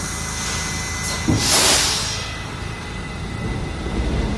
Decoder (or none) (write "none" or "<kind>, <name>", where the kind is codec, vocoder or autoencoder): none